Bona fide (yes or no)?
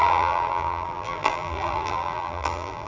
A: no